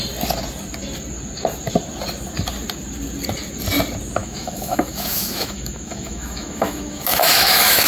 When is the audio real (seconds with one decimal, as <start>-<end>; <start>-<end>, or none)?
0.0-4.2